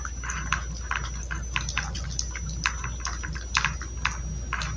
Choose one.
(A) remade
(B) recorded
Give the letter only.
B